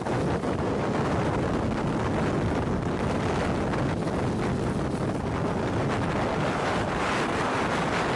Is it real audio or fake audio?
real